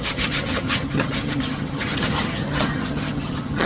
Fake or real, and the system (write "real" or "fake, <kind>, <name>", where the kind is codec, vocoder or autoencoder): fake, vocoder, HiFi-GAN